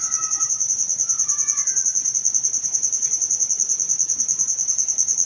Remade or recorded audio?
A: remade